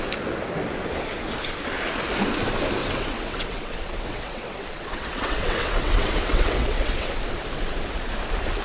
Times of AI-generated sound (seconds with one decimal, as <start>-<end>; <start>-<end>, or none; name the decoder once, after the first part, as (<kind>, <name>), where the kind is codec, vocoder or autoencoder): 2.8-7.1 (vocoder, WaveNeXt)